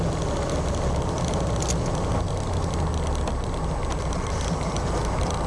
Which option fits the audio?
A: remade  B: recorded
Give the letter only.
B